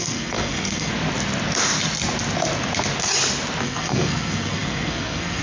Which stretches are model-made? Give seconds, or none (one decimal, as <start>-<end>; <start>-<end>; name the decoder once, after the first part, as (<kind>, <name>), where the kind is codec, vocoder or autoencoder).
0.0-0.9 (codec, SNAC); 3.6-5.4